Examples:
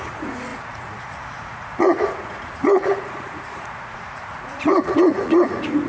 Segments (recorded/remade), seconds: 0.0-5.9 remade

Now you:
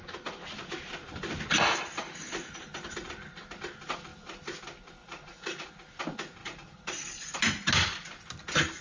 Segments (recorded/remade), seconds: 0.0-5.0 recorded; 5.0-5.7 remade; 5.7-6.4 recorded; 6.4-7.1 remade; 7.1-8.8 recorded

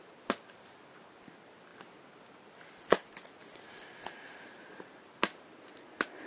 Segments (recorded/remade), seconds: 0.0-6.3 recorded

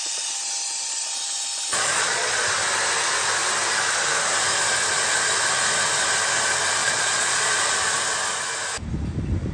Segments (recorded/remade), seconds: 0.0-1.7 recorded; 1.7-2.4 remade; 2.4-6.8 recorded; 6.8-7.6 remade; 7.6-9.5 recorded

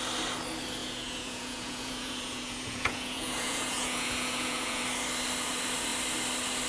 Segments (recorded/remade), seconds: 0.0-0.8 recorded; 0.8-4.8 remade; 4.8-6.7 recorded

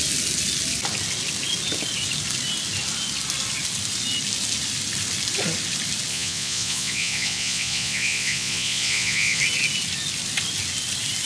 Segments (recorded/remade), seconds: 0.0-6.1 recorded; 6.1-9.4 remade; 9.4-11.3 recorded

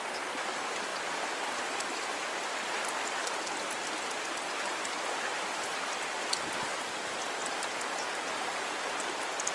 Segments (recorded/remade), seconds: 0.0-9.5 recorded